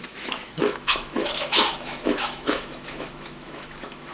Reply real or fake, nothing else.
fake